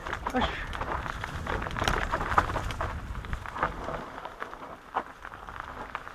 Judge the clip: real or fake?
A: real